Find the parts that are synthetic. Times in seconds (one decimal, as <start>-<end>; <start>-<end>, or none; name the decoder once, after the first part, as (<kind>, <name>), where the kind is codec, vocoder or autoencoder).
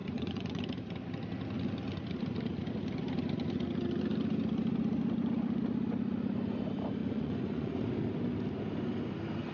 0.0-0.6 (vocoder, Vocos); 7.0-7.9